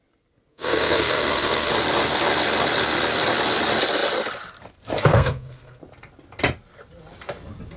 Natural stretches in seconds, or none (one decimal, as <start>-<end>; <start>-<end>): 0.0-0.5; 1.7-5.1; 5.8-7.8